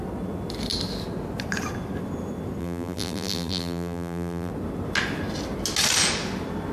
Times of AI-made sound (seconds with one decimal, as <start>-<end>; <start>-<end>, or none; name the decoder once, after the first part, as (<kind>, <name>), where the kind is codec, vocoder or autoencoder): 2.6-4.5 (vocoder, BigVGAN v2)